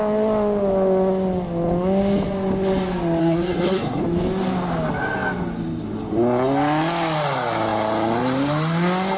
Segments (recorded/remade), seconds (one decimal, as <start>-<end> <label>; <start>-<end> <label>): 0.0-3.2 recorded; 3.2-4.0 remade; 4.0-9.2 recorded